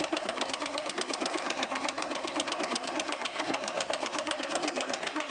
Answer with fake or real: fake